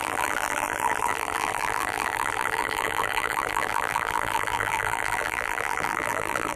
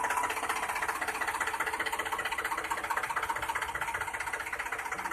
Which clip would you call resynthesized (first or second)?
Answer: first